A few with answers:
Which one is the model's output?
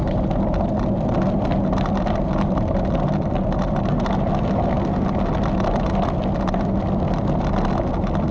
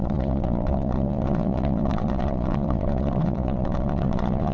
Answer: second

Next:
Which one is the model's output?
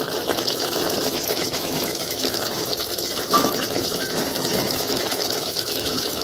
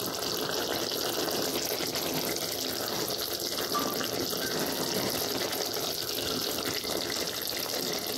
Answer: first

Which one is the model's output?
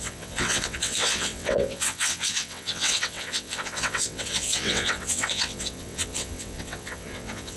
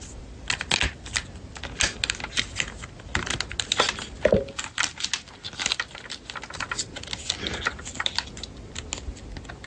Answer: first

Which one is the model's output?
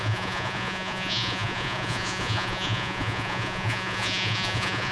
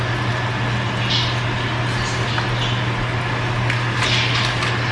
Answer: first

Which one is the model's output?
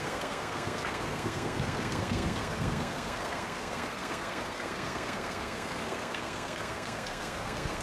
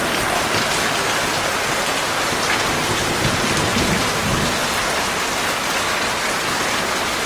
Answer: first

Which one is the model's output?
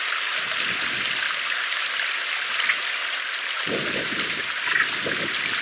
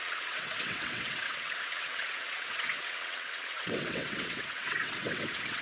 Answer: second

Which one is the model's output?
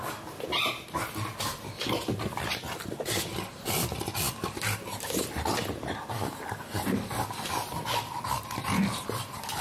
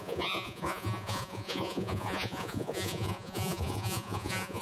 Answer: second